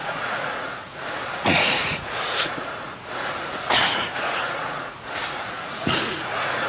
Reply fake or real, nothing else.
fake